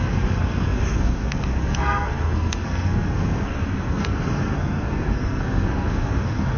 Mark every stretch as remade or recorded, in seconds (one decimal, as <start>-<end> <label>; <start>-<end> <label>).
0.0-6.6 remade